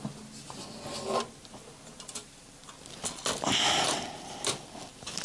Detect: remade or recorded recorded